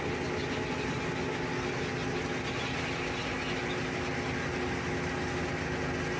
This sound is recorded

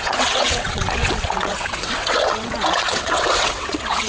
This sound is remade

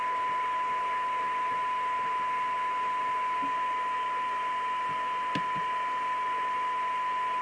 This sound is recorded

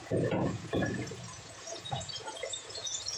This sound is remade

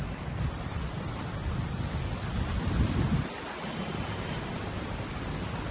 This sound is remade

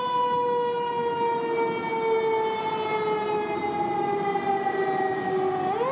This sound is recorded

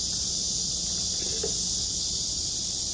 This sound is recorded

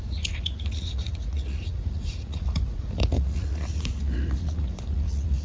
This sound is remade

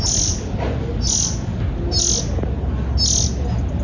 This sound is recorded